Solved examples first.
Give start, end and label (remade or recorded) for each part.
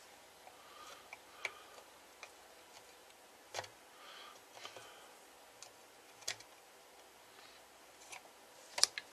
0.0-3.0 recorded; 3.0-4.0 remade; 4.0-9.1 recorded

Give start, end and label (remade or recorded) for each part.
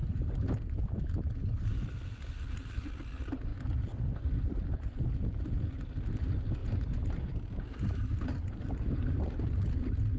0.0-1.0 remade; 1.0-6.6 recorded; 6.6-9.7 remade; 9.7-10.2 recorded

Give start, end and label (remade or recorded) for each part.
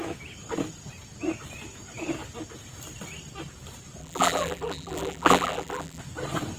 0.0-4.0 recorded; 4.0-6.0 remade; 6.0-6.6 recorded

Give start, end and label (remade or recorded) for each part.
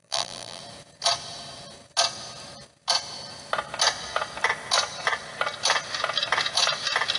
0.0-0.6 remade; 0.6-7.2 recorded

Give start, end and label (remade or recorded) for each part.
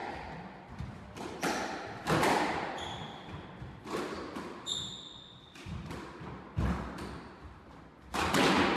0.0-8.8 recorded